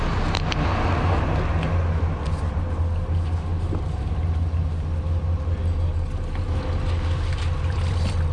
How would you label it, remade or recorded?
recorded